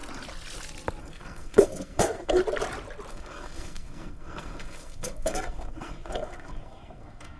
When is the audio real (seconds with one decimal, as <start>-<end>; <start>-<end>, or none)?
0.0-1.0; 2.4-3.1